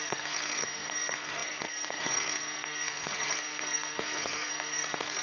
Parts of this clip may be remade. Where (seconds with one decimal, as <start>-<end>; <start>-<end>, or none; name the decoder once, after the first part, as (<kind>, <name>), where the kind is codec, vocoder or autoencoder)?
0.0-5.2 (codec, SNAC)